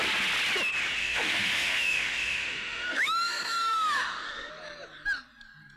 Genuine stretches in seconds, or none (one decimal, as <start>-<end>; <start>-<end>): 0.0-1.0; 4.5-5.8